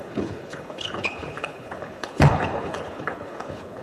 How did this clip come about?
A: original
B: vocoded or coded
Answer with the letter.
B